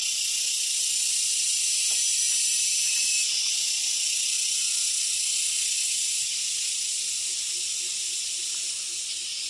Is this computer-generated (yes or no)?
no